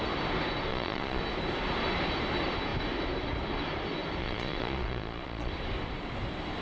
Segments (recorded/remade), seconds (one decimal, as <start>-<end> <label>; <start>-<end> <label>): 0.0-0.7 recorded; 0.7-1.2 remade; 1.2-4.2 recorded; 4.2-5.5 remade; 5.5-6.6 recorded